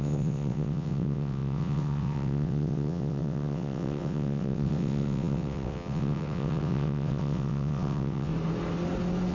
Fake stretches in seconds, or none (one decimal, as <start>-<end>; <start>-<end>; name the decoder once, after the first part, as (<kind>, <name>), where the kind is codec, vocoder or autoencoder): 0.0-8.3 (vocoder, WaveNeXt)